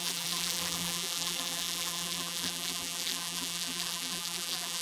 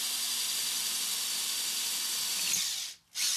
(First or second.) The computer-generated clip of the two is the first